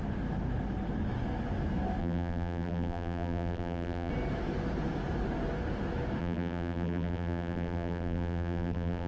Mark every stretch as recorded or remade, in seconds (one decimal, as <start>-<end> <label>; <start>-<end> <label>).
0.0-2.0 recorded; 2.0-4.1 remade; 4.1-6.2 recorded; 6.2-9.1 remade